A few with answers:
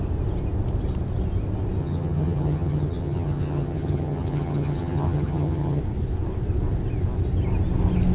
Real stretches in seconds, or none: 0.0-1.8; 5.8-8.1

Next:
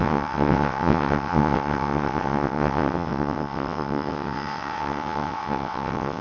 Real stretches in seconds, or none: none